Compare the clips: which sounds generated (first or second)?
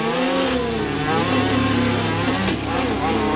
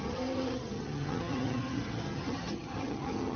second